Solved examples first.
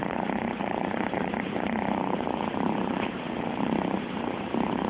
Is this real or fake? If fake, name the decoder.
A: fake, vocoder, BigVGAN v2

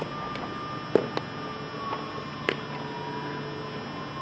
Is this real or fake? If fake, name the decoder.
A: real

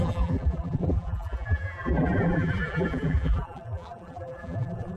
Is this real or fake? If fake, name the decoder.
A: fake, vocoder, BigVGAN v2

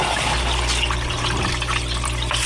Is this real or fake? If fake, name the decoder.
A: real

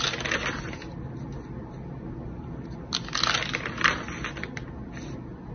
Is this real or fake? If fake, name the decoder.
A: real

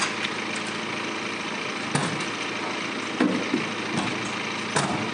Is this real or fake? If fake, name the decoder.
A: real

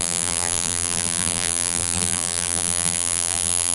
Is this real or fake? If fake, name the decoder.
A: fake, vocoder, BigVGAN v2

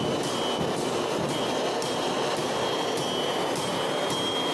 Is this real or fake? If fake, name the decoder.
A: real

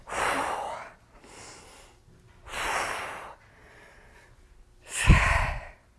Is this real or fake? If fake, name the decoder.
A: real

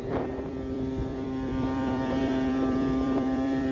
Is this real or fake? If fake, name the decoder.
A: fake, vocoder, BigVGAN v2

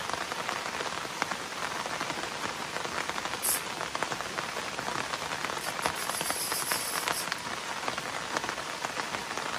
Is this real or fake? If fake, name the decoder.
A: real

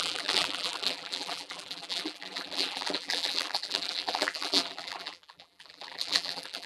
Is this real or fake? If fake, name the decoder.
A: fake, vocoder, BigVGAN v2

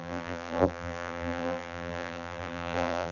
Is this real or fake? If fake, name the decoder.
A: fake, vocoder, BigVGAN v2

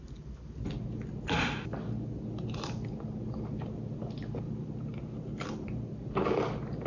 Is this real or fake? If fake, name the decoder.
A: real